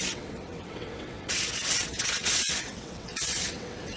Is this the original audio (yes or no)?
no